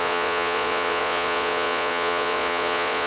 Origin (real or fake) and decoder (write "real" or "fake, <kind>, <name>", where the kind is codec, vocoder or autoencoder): fake, vocoder, Vocos